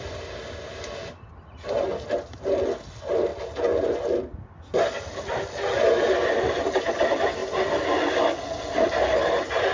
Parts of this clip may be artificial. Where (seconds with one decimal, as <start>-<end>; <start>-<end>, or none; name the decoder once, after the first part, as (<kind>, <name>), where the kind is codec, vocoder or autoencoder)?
none